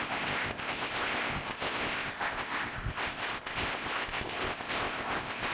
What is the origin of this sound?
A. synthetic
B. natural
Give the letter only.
A